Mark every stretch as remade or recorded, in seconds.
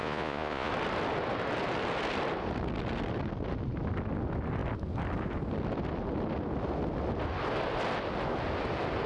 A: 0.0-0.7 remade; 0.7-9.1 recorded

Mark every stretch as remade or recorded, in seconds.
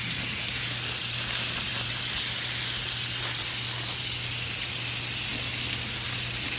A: 0.0-6.6 recorded